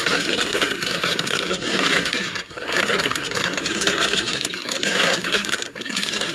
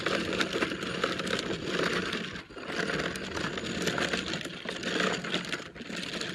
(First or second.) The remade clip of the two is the first